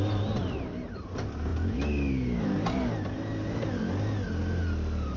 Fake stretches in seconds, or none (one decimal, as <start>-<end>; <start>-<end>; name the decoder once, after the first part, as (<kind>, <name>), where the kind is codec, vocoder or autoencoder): none